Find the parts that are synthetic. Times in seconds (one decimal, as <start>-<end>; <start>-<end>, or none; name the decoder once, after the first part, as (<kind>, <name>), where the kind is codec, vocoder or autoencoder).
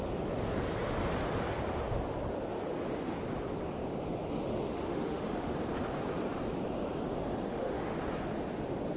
4.7-5.5 (autoencoder, DAC-VAE); 7.5-8.0